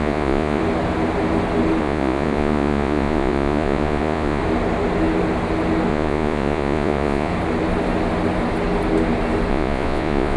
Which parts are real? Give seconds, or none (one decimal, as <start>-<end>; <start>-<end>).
0.6-1.8; 4.4-5.9; 7.3-9.5